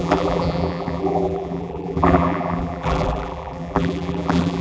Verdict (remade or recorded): remade